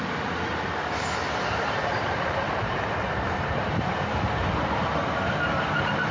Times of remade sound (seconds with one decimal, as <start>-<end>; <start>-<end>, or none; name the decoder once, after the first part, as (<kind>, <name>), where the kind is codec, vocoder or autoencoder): 1.2-4.7 (vocoder, BigVGAN v2)